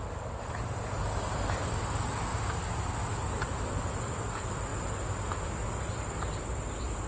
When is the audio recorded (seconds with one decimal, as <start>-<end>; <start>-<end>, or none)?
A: 0.0-7.1